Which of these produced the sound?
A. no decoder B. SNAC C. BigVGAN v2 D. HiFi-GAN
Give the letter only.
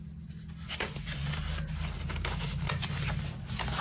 A